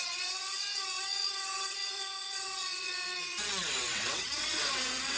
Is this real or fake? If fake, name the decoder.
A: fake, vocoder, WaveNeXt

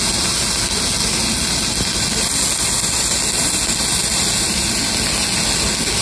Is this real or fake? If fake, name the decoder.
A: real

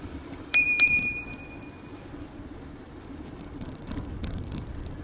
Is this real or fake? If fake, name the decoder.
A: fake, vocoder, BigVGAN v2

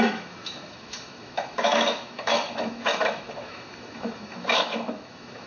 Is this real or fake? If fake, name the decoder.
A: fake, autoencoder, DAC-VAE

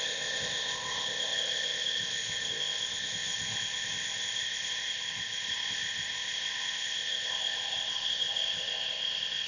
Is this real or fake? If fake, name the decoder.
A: fake, codec, ZipCodec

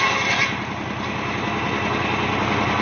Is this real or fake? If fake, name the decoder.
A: real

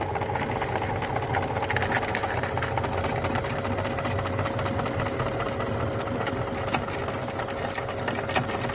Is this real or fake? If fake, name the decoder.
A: real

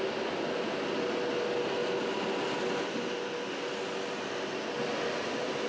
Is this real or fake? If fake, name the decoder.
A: real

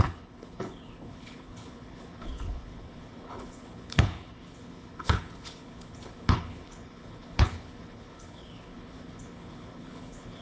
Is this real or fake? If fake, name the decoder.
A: fake, codec, HILCodec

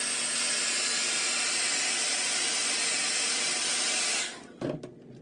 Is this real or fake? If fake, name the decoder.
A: real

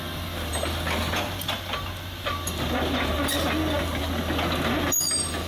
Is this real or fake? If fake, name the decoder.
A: real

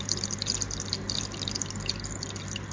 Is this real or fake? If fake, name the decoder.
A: real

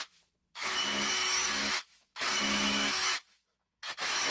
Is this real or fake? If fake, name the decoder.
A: fake, autoencoder, DAC-VAE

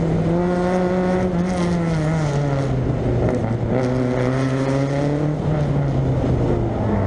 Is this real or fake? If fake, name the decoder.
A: real